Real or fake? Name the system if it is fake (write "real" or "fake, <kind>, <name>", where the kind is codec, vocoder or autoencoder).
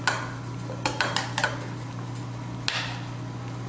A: real